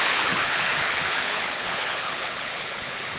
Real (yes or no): no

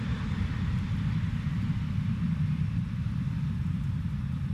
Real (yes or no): no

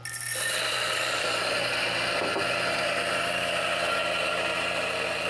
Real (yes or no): no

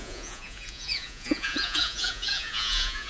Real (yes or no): no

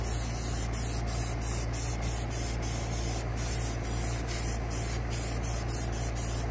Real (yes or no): yes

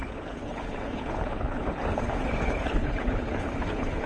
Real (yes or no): no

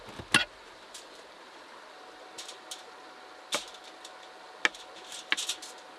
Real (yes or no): yes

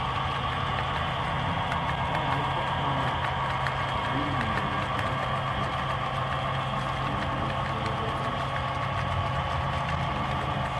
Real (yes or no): yes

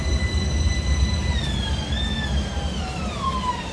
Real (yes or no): yes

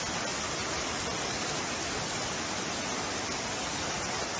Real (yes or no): yes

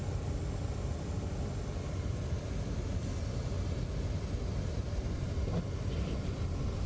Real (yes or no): yes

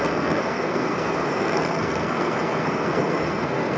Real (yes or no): no